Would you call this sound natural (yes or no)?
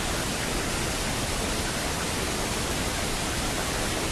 yes